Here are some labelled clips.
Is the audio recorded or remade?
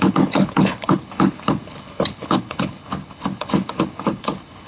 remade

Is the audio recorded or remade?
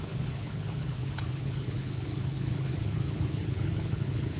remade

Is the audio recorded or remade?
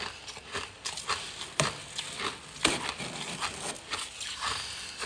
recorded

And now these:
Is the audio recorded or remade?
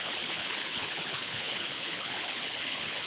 remade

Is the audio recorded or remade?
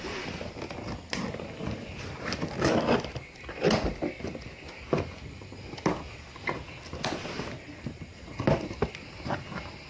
recorded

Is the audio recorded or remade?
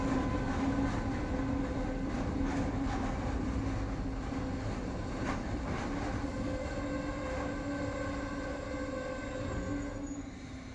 recorded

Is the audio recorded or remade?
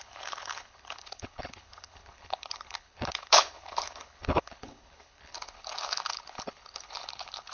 remade